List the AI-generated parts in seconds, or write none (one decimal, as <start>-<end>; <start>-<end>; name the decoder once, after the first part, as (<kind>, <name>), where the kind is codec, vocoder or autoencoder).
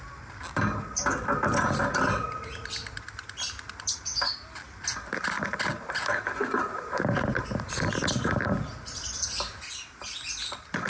6.6-8.5 (vocoder, BigVGAN v2)